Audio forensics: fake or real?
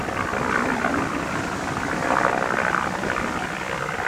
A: real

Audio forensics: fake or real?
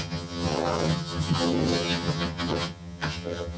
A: fake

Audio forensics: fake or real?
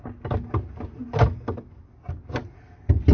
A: real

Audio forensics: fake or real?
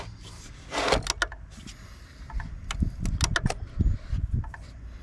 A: real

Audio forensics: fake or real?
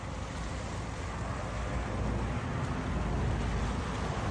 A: real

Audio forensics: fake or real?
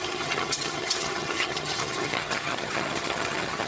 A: fake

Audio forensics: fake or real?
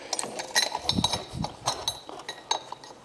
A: real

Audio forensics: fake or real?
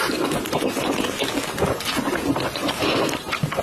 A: real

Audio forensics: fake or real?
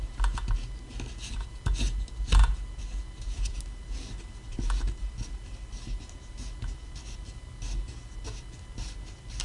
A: real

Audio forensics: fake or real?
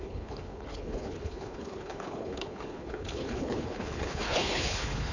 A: fake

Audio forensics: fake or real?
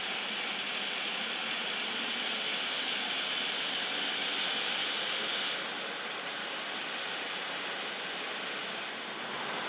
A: real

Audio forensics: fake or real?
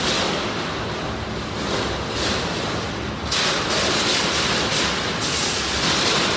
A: real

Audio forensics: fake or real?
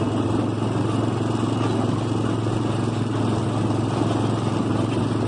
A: real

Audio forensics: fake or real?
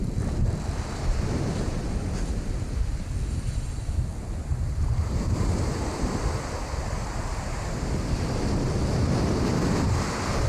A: real